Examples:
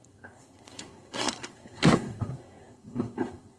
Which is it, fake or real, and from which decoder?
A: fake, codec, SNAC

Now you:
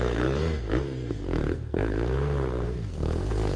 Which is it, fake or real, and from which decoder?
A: fake, codec, SNAC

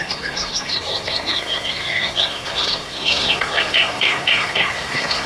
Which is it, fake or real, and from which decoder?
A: fake, codec, SNAC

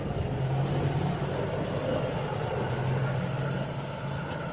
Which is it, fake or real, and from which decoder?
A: real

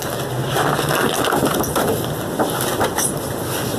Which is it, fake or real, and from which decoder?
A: real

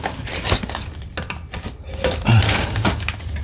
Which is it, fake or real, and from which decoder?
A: real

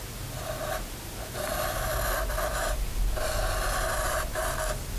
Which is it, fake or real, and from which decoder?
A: real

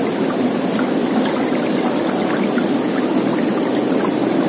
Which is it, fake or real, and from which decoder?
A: real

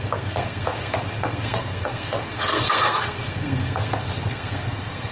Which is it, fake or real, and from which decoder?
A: fake, codec, SNAC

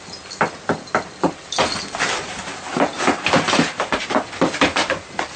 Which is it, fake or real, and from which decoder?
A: real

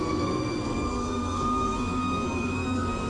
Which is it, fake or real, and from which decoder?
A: fake, codec, SNAC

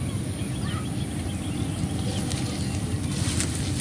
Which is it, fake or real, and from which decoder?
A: real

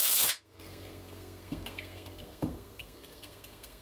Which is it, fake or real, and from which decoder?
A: fake, codec, SNAC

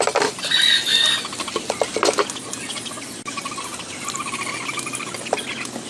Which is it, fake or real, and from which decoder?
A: real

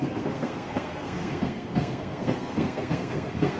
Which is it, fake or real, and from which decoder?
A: fake, codec, SNAC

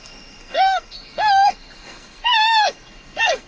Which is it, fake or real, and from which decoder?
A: fake, codec, SNAC